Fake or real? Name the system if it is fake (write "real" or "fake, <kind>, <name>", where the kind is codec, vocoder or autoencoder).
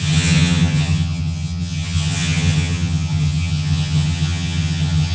fake, vocoder, HiFi-GAN